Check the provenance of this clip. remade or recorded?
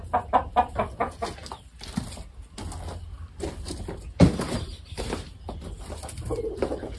recorded